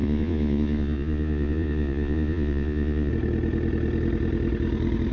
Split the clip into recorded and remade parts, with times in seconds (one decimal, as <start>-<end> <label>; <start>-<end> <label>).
0.0-3.1 remade; 3.1-5.1 recorded